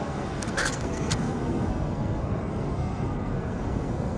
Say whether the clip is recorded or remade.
remade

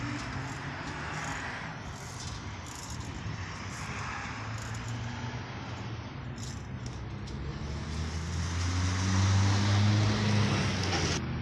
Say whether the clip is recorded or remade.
recorded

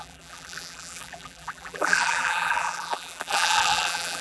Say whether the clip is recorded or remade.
remade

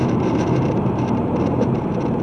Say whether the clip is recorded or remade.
remade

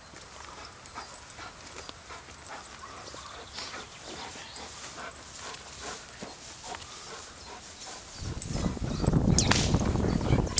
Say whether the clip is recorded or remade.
recorded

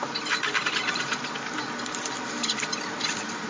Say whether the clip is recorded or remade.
recorded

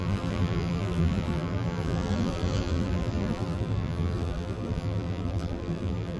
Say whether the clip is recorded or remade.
remade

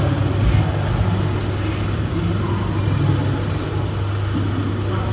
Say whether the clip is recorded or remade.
recorded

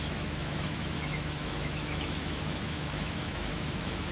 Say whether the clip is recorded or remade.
remade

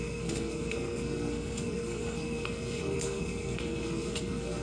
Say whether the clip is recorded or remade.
remade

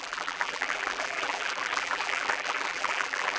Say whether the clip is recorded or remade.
remade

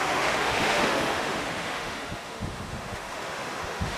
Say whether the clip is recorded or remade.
remade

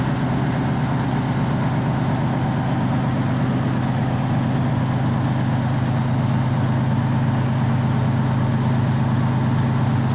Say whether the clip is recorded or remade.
recorded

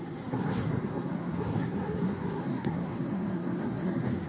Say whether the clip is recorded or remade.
remade